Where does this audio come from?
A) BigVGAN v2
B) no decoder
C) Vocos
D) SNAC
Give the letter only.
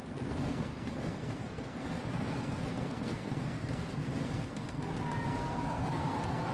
D